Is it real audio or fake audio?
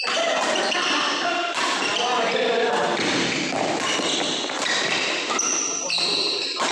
real